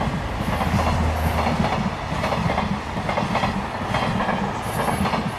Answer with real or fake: real